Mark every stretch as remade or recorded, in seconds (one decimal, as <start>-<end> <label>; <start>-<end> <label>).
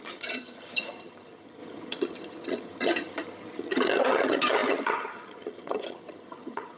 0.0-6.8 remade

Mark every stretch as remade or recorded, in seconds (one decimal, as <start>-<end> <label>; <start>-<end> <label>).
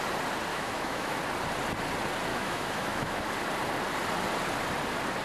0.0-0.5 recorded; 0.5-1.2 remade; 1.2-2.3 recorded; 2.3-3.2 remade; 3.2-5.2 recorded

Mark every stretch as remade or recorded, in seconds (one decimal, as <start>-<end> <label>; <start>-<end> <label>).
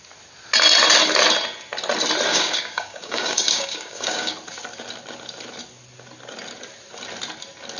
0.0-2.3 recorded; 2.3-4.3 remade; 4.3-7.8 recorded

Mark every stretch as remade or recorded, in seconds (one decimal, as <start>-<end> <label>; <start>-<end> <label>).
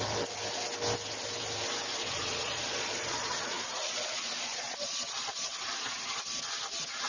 0.0-1.9 recorded; 1.9-6.2 remade; 6.2-7.1 recorded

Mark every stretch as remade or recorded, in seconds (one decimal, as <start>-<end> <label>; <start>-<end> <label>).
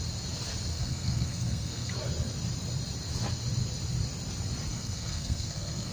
0.0-0.7 recorded; 0.7-1.9 remade; 1.9-4.7 recorded; 4.7-5.9 remade